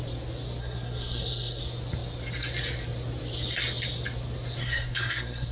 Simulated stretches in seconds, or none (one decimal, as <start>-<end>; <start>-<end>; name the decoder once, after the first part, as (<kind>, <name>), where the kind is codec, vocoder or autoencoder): 0.6-1.6 (codec, SNAC); 4.6-5.5